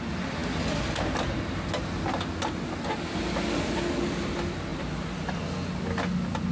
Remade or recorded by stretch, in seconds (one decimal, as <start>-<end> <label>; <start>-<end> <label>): 0.0-4.7 recorded; 4.7-5.4 remade; 5.4-6.5 recorded